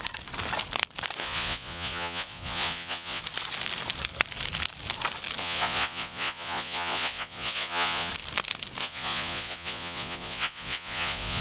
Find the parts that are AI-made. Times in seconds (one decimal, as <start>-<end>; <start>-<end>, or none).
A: 1.2-3.2; 5.4-8.1; 8.8-11.4